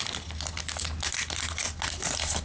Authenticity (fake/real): real